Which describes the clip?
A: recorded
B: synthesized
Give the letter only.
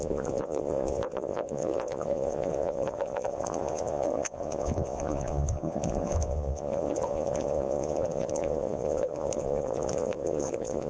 B